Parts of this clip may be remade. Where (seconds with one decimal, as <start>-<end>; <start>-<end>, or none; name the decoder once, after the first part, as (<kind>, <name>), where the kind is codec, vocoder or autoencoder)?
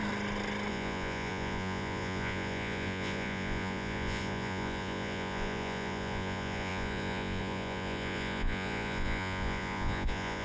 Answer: 0.7-10.4 (vocoder, Vocos)